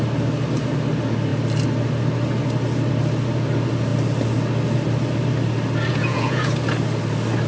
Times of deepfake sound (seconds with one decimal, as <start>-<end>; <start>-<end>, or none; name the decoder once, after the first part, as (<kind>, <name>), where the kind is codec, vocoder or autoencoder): 5.9-6.5 (vocoder, Vocos)